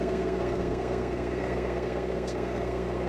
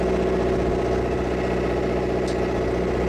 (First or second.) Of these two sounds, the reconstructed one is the first